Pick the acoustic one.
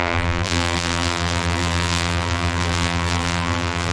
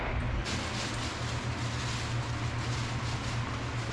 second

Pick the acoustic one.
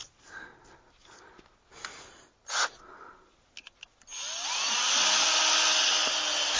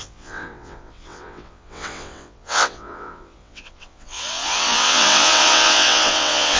first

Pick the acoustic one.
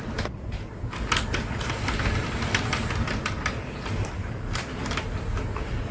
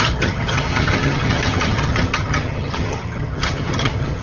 first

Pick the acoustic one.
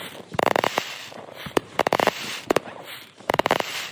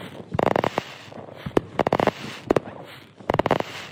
second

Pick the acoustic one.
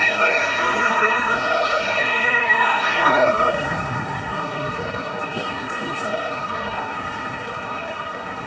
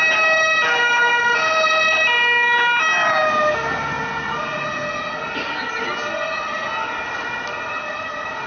second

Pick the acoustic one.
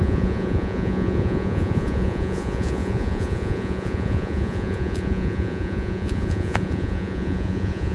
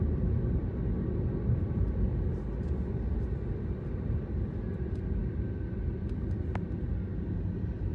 second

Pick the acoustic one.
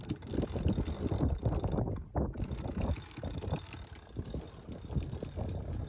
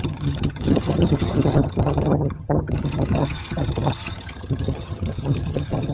first